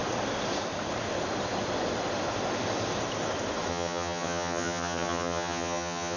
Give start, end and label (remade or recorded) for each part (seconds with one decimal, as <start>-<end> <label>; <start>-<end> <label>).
0.0-3.7 recorded; 3.7-6.2 remade